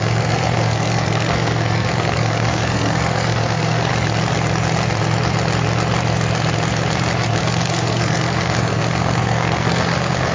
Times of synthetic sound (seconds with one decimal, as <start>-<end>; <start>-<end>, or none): 0.0-3.9; 7.4-10.3